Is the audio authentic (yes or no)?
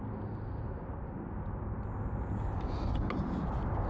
yes